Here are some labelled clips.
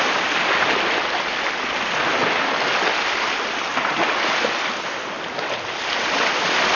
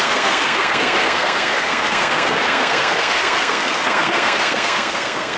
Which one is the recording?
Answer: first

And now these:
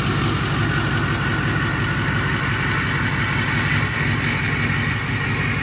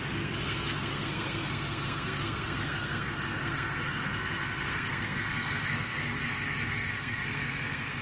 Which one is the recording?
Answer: first